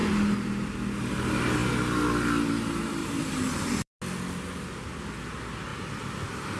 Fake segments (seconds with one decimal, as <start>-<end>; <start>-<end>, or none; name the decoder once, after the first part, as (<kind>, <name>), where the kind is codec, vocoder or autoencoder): 3.0-4.0 (vocoder, BigVGAN v2); 5.7-6.6